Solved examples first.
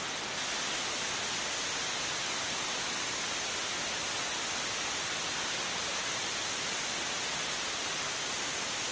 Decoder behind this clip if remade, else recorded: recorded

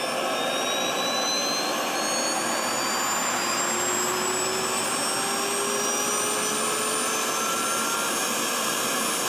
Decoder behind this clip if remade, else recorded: recorded